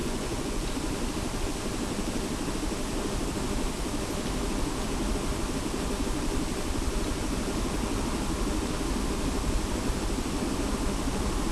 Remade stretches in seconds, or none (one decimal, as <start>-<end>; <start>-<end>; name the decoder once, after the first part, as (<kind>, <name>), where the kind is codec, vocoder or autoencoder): 0.0-0.7 (vocoder, Vocos)